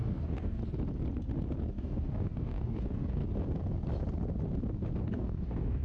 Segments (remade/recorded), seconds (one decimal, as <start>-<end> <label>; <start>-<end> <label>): 0.0-0.6 remade; 0.6-1.7 recorded; 1.7-3.2 remade; 3.2-5.0 recorded; 5.0-5.8 remade